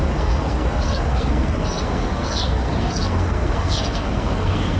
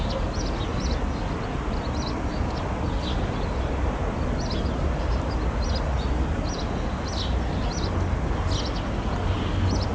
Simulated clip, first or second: first